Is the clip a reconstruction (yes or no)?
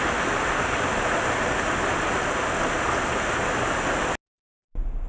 no